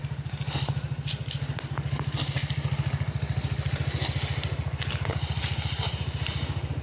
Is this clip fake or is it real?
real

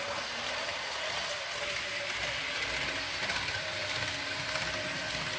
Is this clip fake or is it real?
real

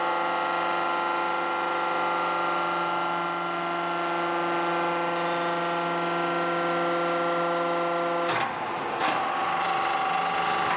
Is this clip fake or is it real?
real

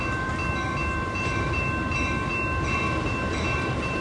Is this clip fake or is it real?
fake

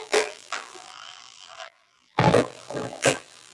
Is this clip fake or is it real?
fake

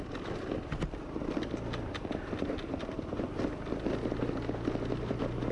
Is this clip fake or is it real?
real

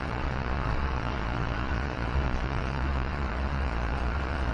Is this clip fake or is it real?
fake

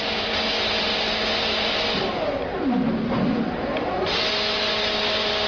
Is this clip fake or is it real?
real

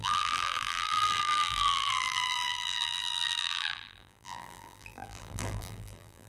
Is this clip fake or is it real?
fake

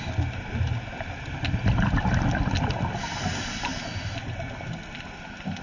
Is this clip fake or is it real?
real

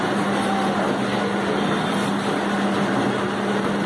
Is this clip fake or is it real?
real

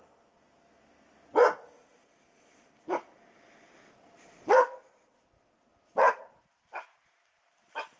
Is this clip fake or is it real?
real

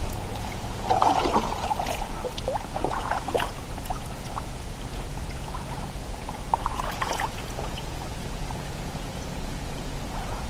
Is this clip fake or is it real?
fake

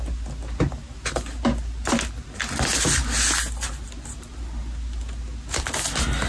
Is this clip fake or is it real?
real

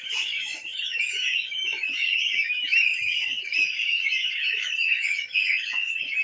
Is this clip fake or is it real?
fake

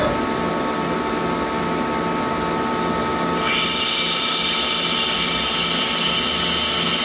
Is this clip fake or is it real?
real